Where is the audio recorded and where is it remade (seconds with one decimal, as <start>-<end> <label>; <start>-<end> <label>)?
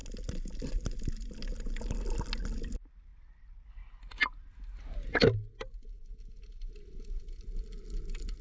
0.0-8.4 recorded